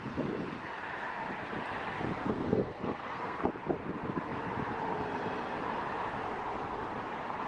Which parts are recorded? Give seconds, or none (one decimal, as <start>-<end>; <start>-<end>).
0.0-2.2; 3.4-7.5